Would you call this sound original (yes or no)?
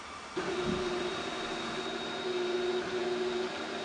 no